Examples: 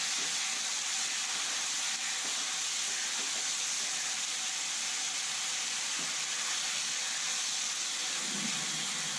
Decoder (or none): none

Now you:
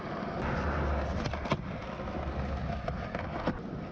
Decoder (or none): none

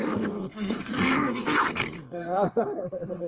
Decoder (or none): codec, SNAC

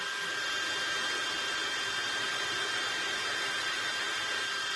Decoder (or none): none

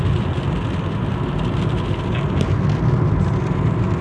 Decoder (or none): none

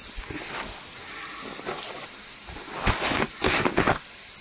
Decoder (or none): none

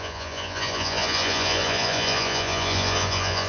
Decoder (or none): vocoder, Vocos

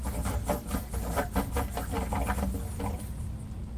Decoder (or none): none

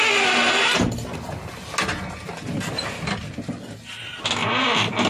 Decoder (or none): none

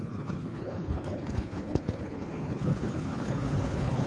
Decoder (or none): codec, HILCodec